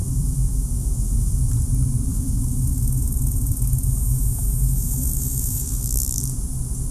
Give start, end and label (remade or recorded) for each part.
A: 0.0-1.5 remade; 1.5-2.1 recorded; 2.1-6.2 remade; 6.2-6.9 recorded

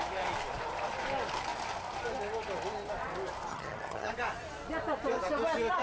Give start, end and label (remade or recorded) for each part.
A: 0.0-3.5 recorded; 3.5-4.1 remade; 4.1-5.8 recorded